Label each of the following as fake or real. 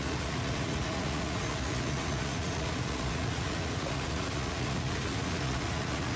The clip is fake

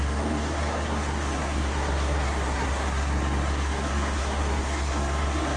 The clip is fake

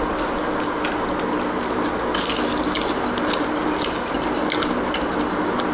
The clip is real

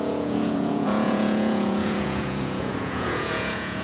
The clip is fake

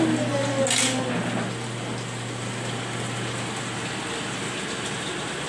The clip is real